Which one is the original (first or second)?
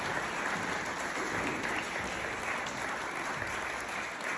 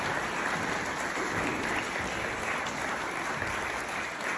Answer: first